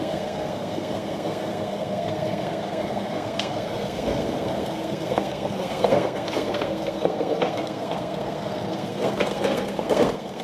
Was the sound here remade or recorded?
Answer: remade